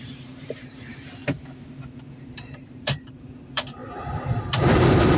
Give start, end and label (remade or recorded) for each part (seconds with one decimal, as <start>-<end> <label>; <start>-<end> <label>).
0.0-1.2 remade; 1.2-2.1 recorded; 2.1-3.8 remade; 3.8-4.8 recorded; 4.8-5.2 remade